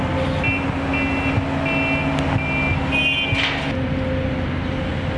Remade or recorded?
recorded